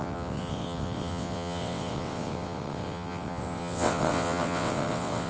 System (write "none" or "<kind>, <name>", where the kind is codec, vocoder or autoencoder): vocoder, WaveNeXt